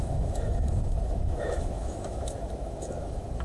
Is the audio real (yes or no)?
no